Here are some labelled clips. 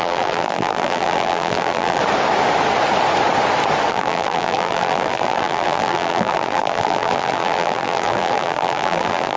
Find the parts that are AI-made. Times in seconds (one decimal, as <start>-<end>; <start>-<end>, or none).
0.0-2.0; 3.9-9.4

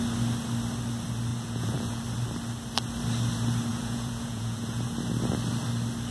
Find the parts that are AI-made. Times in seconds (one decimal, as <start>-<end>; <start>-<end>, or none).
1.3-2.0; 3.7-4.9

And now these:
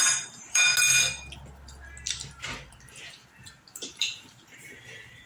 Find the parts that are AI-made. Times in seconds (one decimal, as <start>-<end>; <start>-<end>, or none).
0.0-0.7; 3.9-5.3

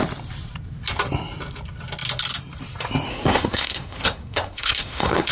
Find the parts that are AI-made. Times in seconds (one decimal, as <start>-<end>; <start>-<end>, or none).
3.1-5.3